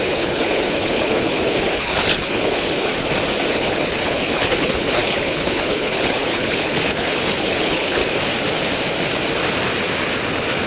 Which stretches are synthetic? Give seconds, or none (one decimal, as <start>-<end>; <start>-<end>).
0.0-2.9; 3.5-8.0